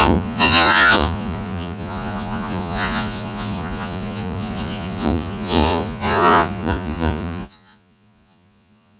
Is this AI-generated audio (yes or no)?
yes